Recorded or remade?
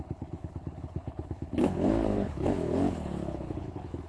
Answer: remade